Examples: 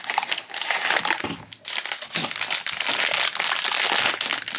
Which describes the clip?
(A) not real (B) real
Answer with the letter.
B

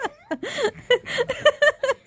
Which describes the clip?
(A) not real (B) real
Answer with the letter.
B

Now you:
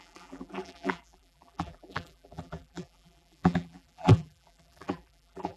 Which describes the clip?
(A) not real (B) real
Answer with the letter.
A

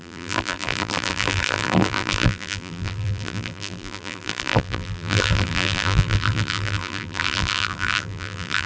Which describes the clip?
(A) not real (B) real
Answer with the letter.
A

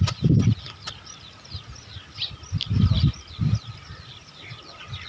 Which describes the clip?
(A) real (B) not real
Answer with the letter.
A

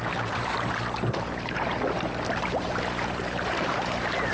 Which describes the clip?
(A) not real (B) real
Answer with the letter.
A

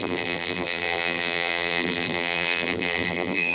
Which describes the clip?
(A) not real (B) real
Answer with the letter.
A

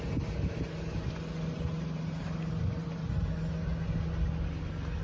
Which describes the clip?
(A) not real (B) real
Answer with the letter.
B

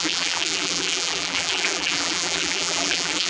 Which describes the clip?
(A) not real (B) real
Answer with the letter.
A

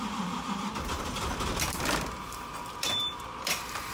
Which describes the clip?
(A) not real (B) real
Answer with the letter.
A